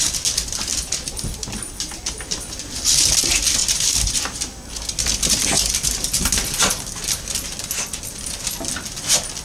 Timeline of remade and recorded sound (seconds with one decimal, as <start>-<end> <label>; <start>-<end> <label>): 0.0-9.4 recorded